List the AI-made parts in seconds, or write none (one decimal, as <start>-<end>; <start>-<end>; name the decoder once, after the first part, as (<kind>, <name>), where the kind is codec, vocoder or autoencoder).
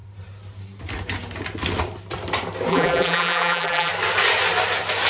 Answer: 2.7-3.9 (vocoder, BigVGAN v2)